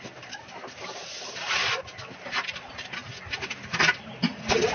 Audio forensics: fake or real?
real